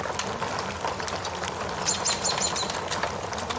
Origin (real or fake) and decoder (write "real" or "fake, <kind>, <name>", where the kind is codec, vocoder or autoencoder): real